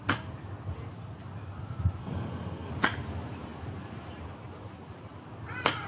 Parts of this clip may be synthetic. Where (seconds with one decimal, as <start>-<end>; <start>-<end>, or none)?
2.0-2.7